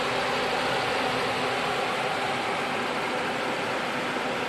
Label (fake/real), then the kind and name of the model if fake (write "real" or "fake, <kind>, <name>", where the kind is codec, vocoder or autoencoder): real